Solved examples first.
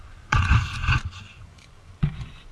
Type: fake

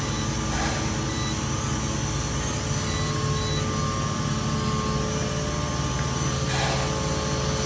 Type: real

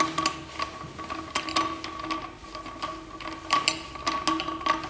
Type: real